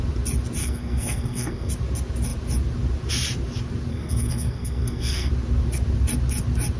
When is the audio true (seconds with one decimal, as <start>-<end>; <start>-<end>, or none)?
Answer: 0.0-0.6; 1.7-3.9; 5.3-6.8